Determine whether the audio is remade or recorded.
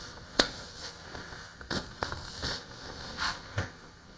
remade